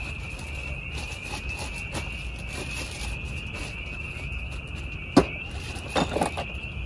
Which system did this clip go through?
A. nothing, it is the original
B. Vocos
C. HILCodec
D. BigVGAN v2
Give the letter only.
A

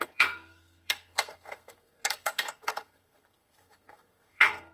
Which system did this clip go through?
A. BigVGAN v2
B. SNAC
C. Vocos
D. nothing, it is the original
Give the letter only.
B